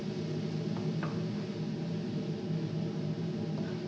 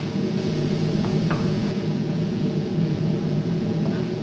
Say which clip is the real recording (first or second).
first